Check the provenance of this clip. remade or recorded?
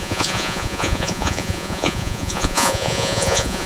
remade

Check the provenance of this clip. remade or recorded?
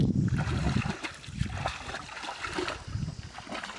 recorded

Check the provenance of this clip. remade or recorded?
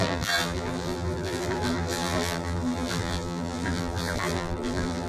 remade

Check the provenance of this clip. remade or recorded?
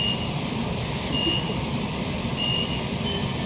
recorded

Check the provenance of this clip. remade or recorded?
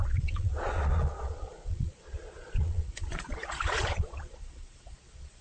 remade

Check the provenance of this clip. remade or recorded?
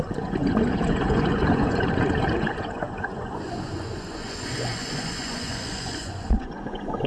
remade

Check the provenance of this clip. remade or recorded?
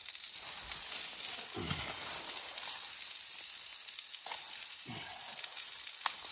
recorded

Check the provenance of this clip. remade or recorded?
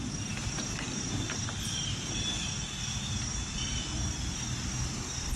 recorded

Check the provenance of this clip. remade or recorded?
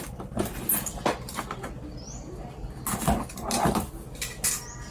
recorded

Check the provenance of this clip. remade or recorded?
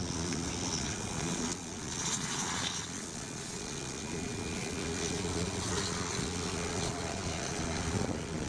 remade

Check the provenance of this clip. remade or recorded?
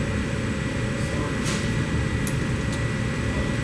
recorded